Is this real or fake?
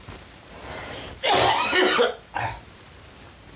fake